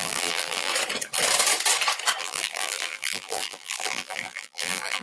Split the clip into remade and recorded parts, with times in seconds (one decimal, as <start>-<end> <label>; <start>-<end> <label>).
0.0-0.7 remade; 0.7-2.2 recorded; 2.2-5.0 remade